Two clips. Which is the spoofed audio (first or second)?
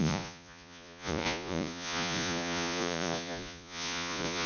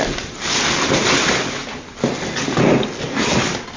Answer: first